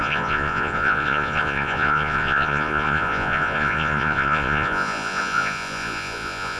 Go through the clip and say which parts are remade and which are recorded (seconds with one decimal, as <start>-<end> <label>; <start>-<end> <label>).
0.0-6.6 remade